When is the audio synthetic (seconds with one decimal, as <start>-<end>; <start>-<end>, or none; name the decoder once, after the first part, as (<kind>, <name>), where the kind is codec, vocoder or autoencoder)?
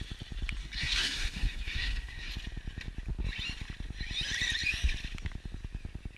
0.6-2.3 (codec, SNAC)